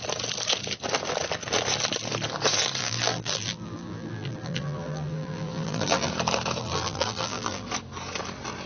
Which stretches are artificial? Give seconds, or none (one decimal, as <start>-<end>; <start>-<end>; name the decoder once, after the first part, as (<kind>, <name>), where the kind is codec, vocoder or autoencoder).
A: 2.8-6.1 (vocoder, BigVGAN v2); 6.6-7.7